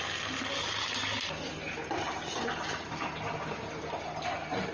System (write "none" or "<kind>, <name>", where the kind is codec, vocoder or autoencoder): none